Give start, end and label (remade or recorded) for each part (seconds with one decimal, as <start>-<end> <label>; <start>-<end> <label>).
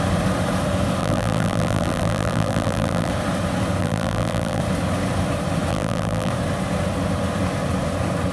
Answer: 0.0-1.0 recorded; 1.0-3.1 remade; 3.1-3.8 recorded; 3.8-4.6 remade; 4.6-5.7 recorded; 5.7-6.3 remade; 6.3-8.3 recorded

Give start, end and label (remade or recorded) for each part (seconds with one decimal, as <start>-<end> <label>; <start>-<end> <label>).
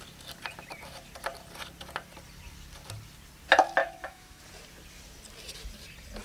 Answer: 0.0-3.8 recorded; 3.8-4.4 remade; 4.4-6.2 recorded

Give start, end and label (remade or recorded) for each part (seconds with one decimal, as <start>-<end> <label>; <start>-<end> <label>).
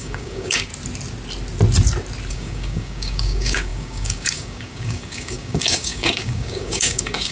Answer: 0.0-0.7 remade; 0.7-2.3 recorded; 2.3-7.3 remade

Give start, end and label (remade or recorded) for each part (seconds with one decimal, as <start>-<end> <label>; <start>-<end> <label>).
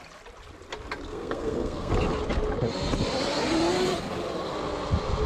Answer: 0.0-1.1 recorded; 1.1-1.9 remade; 1.9-5.3 recorded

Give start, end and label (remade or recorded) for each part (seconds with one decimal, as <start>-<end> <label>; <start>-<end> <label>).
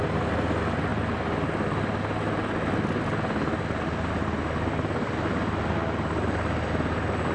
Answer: 0.0-7.3 recorded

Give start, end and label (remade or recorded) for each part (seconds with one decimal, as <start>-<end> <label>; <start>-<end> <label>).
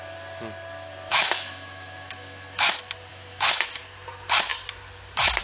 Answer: 0.0-1.1 recorded; 1.1-2.7 remade; 2.7-3.1 recorded; 3.1-3.8 remade; 3.8-5.4 recorded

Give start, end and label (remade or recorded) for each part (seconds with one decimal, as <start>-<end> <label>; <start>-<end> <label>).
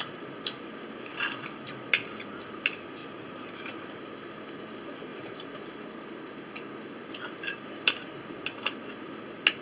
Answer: 0.0-3.0 recorded; 3.0-3.5 remade; 3.5-9.6 recorded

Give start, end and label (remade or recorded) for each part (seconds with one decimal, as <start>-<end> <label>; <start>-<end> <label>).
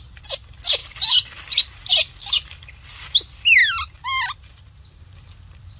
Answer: 0.0-5.8 recorded